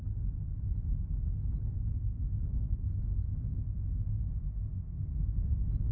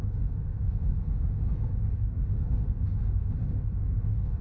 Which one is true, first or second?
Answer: first